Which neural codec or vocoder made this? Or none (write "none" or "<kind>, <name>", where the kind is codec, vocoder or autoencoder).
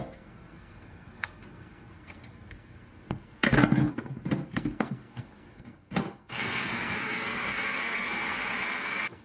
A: codec, SNAC